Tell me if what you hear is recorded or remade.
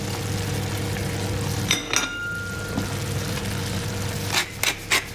recorded